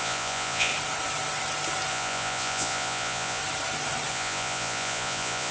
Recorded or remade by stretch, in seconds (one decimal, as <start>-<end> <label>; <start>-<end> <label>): 0.0-0.7 remade; 0.7-1.9 recorded; 1.9-3.4 remade; 3.4-4.1 recorded; 4.1-5.5 remade